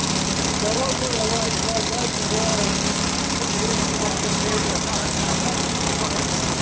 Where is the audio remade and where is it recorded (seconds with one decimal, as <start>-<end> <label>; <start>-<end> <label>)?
0.0-2.5 recorded; 2.5-6.6 remade